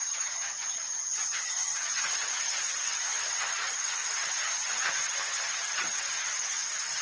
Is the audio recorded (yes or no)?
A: no